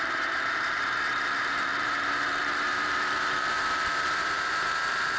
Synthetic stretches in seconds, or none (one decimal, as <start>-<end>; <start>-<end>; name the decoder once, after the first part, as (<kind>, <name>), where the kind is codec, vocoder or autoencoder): 0.0-5.2 (vocoder, BigVGAN v2)